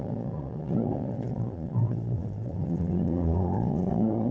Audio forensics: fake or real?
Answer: fake